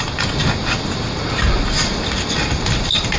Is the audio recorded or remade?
recorded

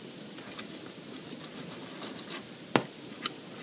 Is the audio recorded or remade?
recorded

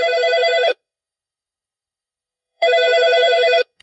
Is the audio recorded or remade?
remade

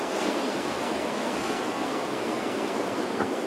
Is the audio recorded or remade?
remade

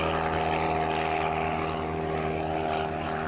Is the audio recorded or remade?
recorded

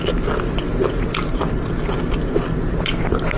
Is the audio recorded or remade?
recorded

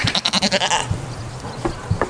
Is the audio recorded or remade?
recorded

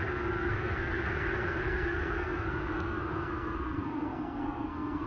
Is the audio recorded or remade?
remade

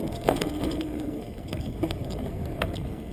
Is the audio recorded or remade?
remade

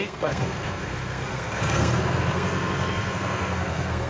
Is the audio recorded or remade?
remade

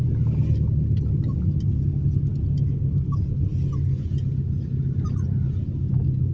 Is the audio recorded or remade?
recorded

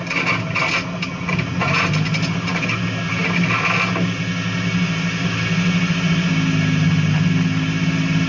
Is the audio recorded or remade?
recorded